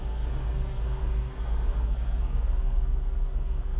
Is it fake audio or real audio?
fake